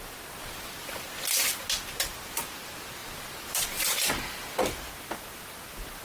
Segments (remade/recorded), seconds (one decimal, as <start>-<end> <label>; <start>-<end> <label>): 0.0-6.0 recorded

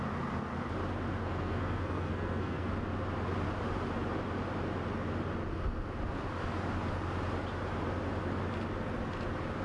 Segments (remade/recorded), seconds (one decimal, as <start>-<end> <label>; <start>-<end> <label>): 0.0-1.2 recorded; 1.2-2.7 remade; 2.7-9.6 recorded

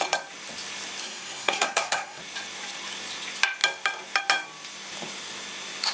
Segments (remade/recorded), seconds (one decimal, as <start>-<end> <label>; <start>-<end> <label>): 0.0-1.0 recorded; 1.0-2.2 remade; 2.2-5.9 recorded

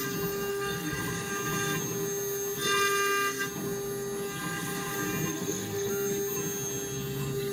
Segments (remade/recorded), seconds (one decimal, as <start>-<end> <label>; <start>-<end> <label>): 0.0-0.5 recorded; 0.5-1.0 remade; 1.0-5.3 recorded; 5.3-5.9 remade; 5.9-7.5 recorded

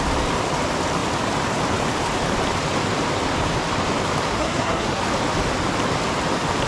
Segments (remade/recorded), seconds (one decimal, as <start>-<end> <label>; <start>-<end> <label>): 0.0-4.3 recorded; 4.3-5.0 remade; 5.0-6.7 recorded

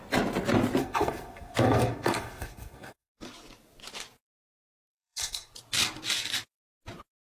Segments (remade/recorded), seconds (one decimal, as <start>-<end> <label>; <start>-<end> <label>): 0.0-0.8 recorded; 0.8-3.2 remade; 3.2-4.6 recorded; 4.6-5.5 remade; 5.5-7.2 recorded

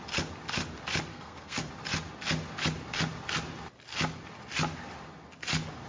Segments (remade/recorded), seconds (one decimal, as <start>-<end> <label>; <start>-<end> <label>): 0.0-1.1 recorded; 1.1-1.7 remade; 1.7-5.9 recorded